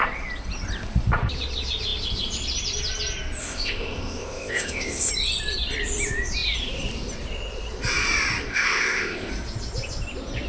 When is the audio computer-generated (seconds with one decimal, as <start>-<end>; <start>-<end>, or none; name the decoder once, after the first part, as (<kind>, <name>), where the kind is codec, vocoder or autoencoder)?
3.4-5.1 (codec, ZipCodec); 8.5-9.3